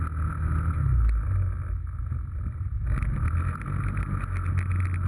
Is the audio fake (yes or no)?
no